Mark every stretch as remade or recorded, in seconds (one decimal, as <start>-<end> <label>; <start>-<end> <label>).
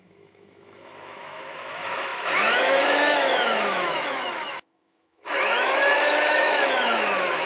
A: 0.0-7.5 remade